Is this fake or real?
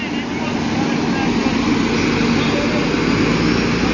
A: real